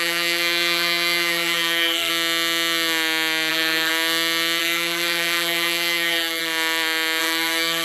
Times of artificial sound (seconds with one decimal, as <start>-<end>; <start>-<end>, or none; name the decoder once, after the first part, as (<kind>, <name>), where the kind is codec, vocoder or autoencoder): 0.0-2.1 (codec, SNAC); 3.5-3.9; 4.6-6.4; 7.2-7.8